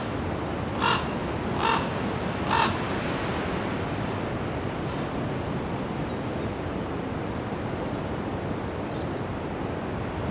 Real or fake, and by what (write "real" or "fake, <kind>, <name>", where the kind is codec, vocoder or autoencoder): real